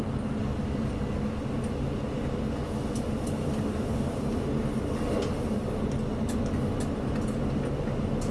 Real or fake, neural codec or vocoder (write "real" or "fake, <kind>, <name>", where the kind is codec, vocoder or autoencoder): real